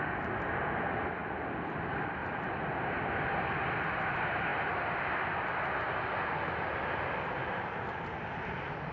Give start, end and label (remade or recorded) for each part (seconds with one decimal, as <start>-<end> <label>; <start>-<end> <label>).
0.0-8.9 recorded